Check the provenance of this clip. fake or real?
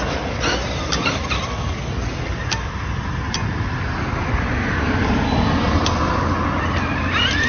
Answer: real